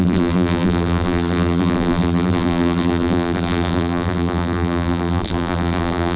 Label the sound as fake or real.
fake